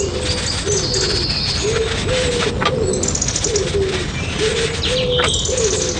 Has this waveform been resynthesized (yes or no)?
no